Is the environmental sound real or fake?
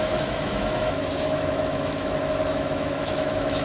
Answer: fake